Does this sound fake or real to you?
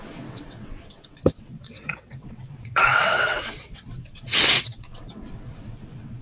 fake